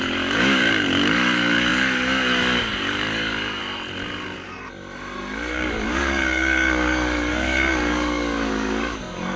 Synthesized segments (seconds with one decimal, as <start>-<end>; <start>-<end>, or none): 0.0-3.6; 5.5-9.4